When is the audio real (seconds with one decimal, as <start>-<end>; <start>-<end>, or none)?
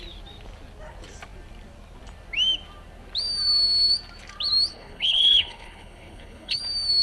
0.0-4.7; 6.6-7.0